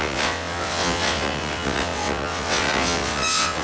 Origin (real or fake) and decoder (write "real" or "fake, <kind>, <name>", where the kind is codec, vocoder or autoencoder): fake, vocoder, WaveNeXt